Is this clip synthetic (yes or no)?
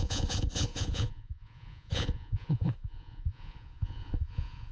yes